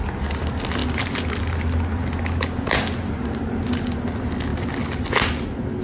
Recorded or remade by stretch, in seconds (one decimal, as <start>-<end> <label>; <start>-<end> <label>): 0.0-5.8 recorded